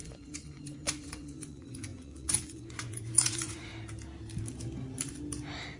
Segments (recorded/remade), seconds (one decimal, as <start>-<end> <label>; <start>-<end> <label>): 0.0-3.7 remade; 3.7-5.8 recorded